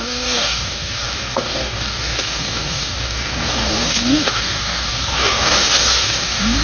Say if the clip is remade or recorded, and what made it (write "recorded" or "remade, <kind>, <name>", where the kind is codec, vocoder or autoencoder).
remade, codec, DAC